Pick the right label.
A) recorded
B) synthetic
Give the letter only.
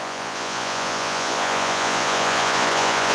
B